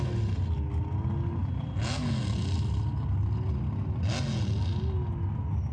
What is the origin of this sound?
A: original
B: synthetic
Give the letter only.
A